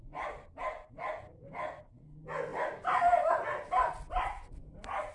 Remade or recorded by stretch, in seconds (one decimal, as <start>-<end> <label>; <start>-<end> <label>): 0.0-5.1 recorded